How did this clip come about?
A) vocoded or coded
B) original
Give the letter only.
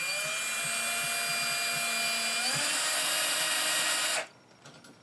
B